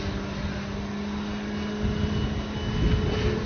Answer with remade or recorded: recorded